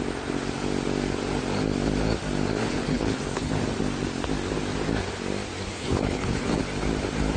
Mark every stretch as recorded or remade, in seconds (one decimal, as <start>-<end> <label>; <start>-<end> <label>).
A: 0.0-2.7 recorded; 2.7-3.5 remade; 3.5-5.7 recorded; 5.7-6.6 remade; 6.6-7.4 recorded